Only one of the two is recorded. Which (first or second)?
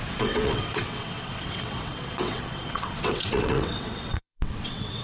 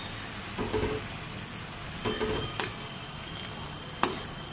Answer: second